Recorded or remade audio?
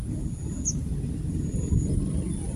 recorded